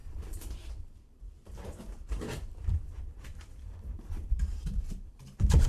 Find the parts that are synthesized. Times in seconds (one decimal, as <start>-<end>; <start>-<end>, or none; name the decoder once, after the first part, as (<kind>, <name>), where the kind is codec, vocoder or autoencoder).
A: 0.0-5.7 (vocoder, BigVGAN v2)